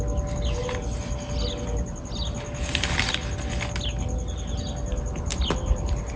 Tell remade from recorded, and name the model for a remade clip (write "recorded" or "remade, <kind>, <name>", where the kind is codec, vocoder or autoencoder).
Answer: recorded